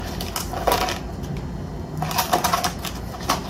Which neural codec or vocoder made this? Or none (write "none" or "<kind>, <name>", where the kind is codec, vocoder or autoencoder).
none